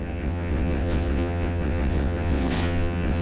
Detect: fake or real fake